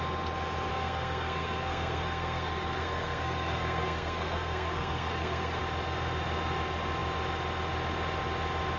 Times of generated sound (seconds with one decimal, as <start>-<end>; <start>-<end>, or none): 0.7-5.6